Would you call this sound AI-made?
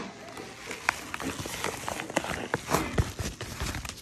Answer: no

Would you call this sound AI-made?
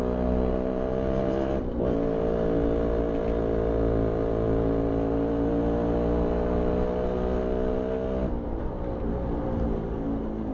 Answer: no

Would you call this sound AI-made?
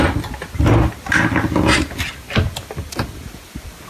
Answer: no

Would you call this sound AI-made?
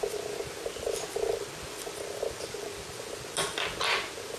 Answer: no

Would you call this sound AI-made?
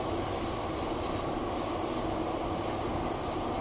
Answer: no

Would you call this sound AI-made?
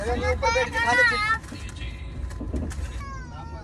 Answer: no